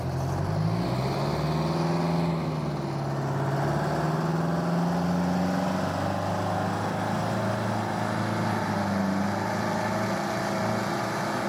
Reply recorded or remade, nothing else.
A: recorded